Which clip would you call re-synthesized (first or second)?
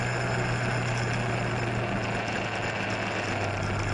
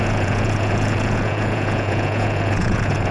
second